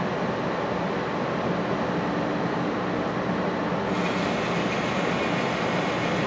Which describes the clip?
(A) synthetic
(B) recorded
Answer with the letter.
B